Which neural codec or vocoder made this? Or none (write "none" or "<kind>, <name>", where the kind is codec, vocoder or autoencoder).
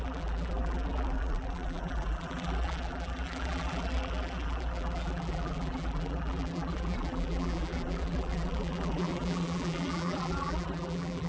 vocoder, BigVGAN v2